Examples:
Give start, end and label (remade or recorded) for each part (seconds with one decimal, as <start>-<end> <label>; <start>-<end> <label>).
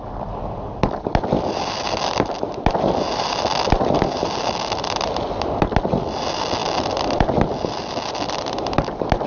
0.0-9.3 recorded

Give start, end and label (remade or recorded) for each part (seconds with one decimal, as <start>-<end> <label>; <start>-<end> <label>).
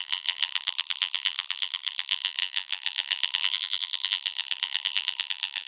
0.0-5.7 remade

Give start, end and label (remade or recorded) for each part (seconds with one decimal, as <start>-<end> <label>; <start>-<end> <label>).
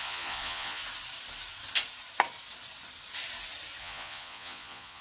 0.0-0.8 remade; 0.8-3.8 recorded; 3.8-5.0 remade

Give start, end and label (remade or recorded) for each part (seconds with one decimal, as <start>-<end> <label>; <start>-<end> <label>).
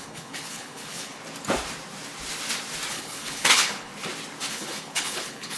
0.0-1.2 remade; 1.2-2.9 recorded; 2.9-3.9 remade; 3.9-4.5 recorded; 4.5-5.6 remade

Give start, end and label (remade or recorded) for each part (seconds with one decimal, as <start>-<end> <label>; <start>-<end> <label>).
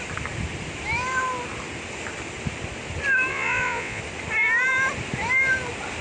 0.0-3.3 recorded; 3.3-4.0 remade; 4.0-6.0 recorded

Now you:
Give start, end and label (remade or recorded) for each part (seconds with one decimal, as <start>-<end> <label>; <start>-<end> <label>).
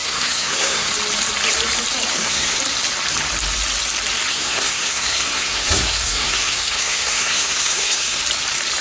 0.0-0.9 remade; 0.9-2.1 recorded; 2.1-2.6 remade; 2.6-4.3 recorded; 4.3-8.2 remade; 8.2-8.8 recorded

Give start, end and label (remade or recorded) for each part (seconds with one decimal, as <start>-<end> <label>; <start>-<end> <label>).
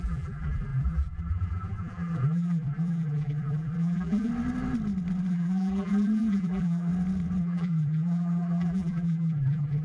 0.0-4.3 remade; 4.3-5.3 recorded; 5.3-6.9 remade; 6.9-7.4 recorded; 7.4-9.8 remade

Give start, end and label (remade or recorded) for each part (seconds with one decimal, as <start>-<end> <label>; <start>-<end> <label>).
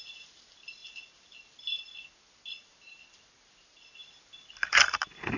0.0-5.4 recorded